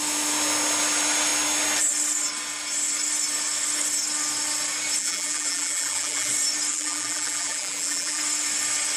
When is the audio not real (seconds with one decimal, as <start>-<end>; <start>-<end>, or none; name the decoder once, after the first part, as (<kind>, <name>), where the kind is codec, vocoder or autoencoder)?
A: 5.0-6.3 (vocoder, BigVGAN v2); 6.7-8.2